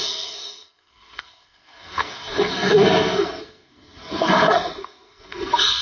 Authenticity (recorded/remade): remade